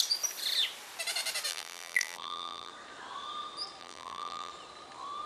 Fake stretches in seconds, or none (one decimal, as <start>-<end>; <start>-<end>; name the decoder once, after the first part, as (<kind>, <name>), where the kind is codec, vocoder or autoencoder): 1.5-2.7 (vocoder, BigVGAN v2); 3.8-4.5